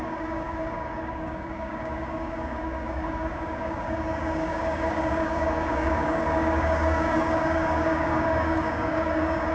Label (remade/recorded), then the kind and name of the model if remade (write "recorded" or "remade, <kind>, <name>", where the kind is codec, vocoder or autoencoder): remade, codec, DAC